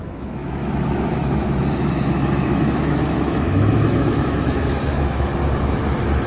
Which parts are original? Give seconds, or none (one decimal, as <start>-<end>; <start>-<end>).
5.3-6.3